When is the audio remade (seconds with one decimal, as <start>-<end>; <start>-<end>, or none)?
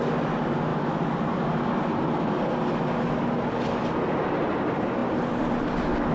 none